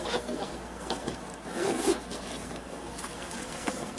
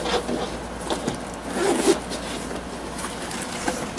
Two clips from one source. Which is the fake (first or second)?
first